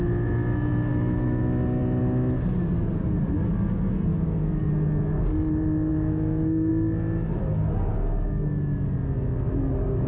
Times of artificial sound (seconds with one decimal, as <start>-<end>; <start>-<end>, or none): 0.9-1.4; 4.1-4.7; 5.9-6.7